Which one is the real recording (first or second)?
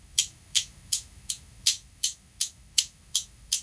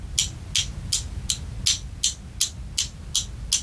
second